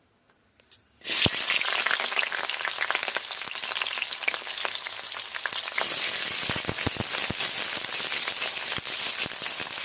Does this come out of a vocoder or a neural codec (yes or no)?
no